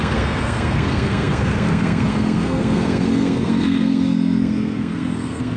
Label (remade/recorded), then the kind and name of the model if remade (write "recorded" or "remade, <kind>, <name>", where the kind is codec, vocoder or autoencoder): remade, codec, SNAC